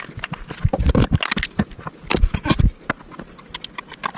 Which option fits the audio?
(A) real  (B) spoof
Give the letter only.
A